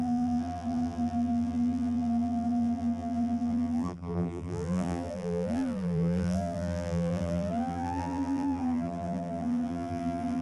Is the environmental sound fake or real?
fake